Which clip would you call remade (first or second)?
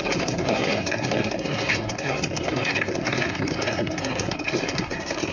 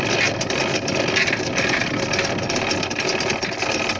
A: first